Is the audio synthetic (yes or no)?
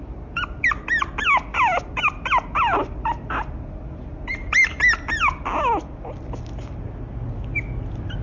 no